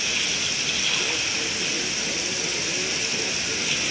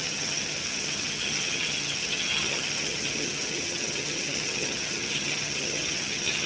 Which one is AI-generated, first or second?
second